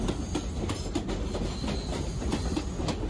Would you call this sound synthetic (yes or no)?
no